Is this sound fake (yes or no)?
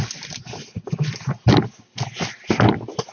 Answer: no